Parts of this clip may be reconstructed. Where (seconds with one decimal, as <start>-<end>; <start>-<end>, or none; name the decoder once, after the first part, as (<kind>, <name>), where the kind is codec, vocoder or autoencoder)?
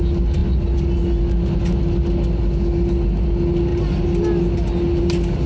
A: none